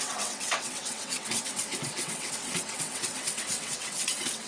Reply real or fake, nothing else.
fake